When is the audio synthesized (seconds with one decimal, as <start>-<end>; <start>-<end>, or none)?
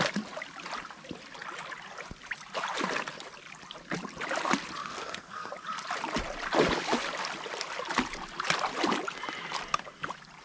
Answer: 4.8-5.5